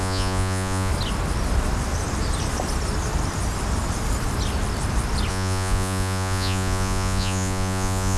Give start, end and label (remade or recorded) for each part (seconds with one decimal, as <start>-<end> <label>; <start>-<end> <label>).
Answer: 0.0-0.9 remade; 0.9-5.3 recorded; 5.3-8.2 remade